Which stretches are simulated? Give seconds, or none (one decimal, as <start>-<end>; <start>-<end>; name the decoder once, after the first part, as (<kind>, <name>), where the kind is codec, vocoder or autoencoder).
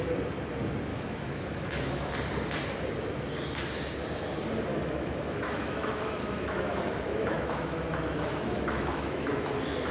0.9-2.1 (autoencoder, DAC-VAE); 4.7-9.5